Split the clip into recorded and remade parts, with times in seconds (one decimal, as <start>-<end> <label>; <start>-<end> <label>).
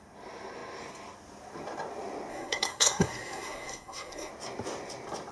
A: 0.0-2.3 recorded; 2.3-4.3 remade; 4.3-5.3 recorded